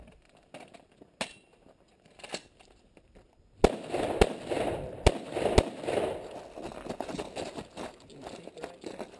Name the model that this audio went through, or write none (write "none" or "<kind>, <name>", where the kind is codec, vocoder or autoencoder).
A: none